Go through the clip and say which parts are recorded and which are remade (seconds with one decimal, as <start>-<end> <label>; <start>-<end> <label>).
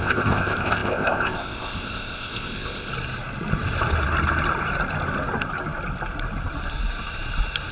0.0-2.9 remade; 2.9-7.7 recorded